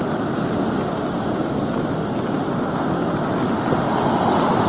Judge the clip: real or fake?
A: real